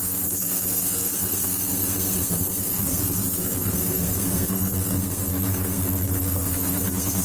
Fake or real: fake